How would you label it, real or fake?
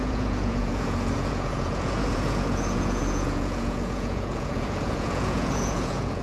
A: fake